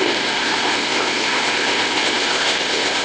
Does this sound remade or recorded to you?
remade